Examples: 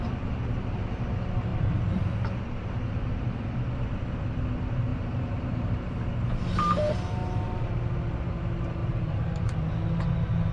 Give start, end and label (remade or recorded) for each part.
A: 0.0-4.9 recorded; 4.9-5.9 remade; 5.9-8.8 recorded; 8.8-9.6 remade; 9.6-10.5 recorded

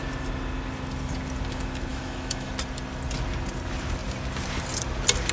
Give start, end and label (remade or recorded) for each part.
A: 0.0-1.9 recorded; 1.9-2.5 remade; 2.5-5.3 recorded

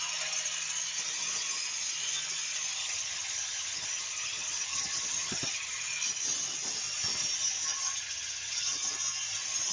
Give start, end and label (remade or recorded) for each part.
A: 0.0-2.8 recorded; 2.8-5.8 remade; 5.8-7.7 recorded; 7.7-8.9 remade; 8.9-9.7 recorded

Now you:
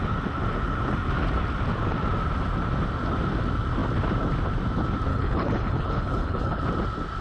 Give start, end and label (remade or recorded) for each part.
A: 0.0-5.1 recorded; 5.1-6.6 remade; 6.6-7.2 recorded

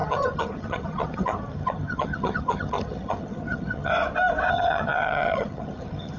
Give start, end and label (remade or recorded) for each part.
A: 0.0-3.9 remade; 3.9-4.5 recorded; 4.5-6.2 remade

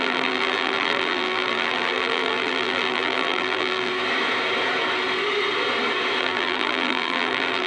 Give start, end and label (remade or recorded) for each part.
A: 0.0-3.9 remade; 3.9-6.2 recorded; 6.2-7.7 remade